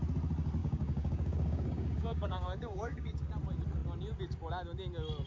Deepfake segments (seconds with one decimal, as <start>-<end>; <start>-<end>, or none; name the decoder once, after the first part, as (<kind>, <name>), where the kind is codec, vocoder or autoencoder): 0.6-3.3 (codec, DAC)